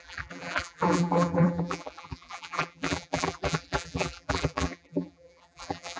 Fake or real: fake